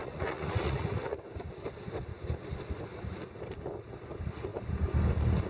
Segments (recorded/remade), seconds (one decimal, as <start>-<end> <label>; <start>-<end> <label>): 0.0-1.2 remade; 1.2-5.5 recorded